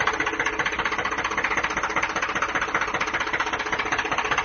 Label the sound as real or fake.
real